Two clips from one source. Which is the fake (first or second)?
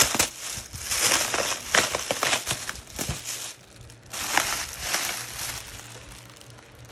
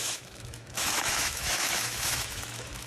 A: second